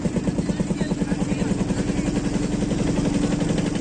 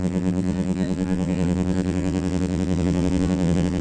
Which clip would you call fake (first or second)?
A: second